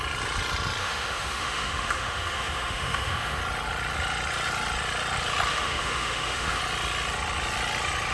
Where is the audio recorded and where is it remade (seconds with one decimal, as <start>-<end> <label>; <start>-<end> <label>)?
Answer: 0.0-0.8 recorded; 0.8-3.4 remade; 3.4-5.5 recorded; 5.5-6.6 remade; 6.6-8.1 recorded